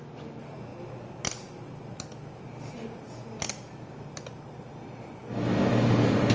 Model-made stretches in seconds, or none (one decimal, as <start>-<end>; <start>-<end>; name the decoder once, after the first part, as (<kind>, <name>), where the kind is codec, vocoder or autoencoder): none